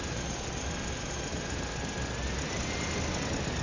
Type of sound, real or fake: real